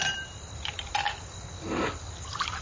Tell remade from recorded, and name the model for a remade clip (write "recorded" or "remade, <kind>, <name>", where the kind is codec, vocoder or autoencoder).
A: recorded